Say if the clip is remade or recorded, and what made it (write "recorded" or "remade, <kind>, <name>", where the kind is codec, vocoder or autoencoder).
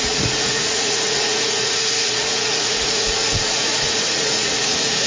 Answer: remade, vocoder, Vocos